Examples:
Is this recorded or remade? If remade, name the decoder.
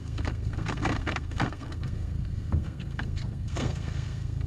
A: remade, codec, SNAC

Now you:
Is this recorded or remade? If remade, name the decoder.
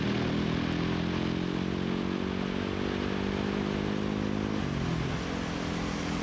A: recorded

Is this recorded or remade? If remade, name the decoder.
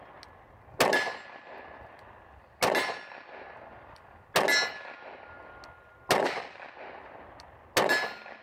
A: recorded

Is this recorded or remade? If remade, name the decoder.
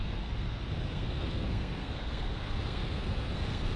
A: remade, codec, SNAC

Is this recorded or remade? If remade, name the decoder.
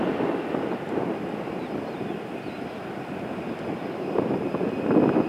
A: recorded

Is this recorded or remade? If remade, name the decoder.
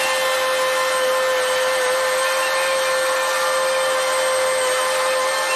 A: recorded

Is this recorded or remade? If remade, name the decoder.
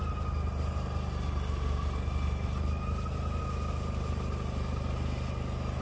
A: recorded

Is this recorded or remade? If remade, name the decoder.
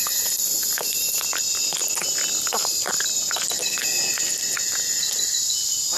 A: recorded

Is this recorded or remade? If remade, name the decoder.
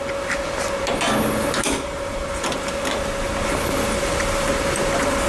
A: recorded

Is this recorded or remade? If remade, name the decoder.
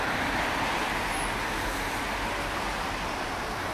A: recorded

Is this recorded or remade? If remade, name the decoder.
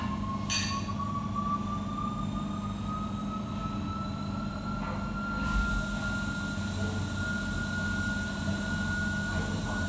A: recorded